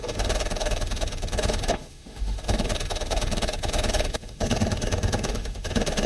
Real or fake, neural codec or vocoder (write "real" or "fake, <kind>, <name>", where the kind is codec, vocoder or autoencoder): fake, autoencoder, DAC-VAE